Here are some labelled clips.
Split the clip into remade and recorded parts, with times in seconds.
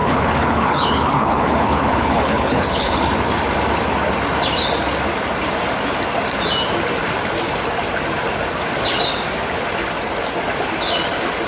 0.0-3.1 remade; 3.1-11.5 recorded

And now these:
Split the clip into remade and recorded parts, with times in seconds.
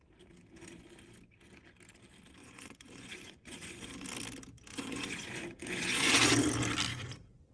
0.0-2.4 recorded; 2.4-3.9 remade; 3.9-4.7 recorded; 4.7-6.1 remade; 6.1-6.9 recorded; 6.9-7.5 remade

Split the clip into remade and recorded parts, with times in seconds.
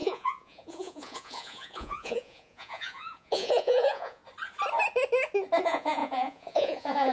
0.0-4.2 remade; 4.2-5.6 recorded; 5.6-7.1 remade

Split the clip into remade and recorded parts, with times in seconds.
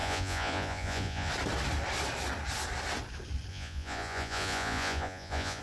0.0-1.3 remade; 1.3-3.5 recorded; 3.5-5.6 remade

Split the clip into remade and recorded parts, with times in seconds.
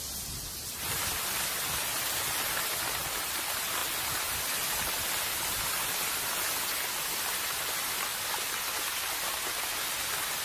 0.0-3.8 recorded; 3.8-4.4 remade; 4.4-10.4 recorded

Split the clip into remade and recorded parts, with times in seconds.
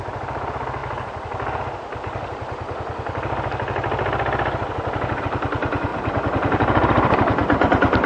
0.0-5.9 recorded; 5.9-8.1 remade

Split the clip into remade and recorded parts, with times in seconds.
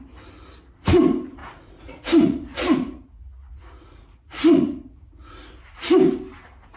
0.0-1.4 recorded; 1.4-5.5 remade; 5.5-6.8 recorded